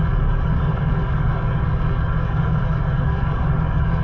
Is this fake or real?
fake